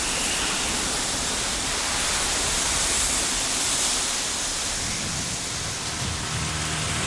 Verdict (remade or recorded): recorded